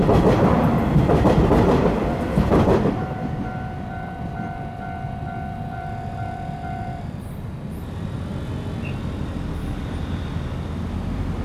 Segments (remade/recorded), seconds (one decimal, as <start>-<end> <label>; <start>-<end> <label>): 0.0-8.3 remade; 8.3-9.3 recorded; 9.3-11.4 remade